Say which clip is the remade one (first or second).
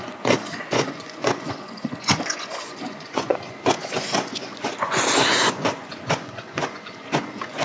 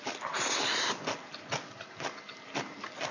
first